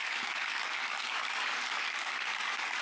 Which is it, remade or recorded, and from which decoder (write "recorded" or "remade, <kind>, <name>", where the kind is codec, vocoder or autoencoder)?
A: remade, codec, DAC